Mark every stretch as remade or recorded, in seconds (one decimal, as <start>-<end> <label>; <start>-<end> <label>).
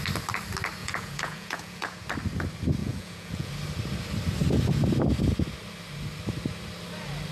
0.0-0.8 recorded; 0.8-2.0 remade; 2.0-2.8 recorded; 2.8-3.5 remade; 3.5-7.3 recorded